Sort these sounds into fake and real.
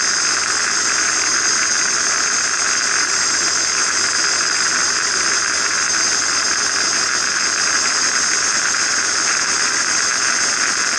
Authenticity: real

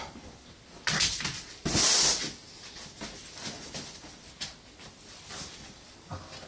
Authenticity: real